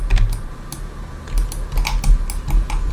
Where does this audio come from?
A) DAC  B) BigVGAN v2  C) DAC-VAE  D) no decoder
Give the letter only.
D